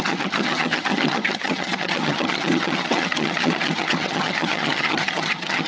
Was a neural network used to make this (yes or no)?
yes